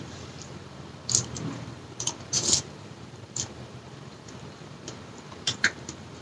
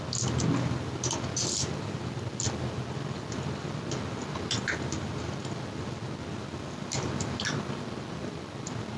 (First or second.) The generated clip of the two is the first